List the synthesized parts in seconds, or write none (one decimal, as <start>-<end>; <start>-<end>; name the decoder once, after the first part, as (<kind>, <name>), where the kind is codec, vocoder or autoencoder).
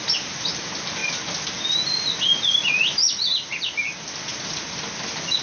none